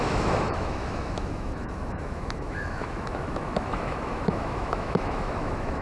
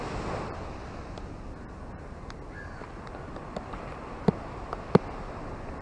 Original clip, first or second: second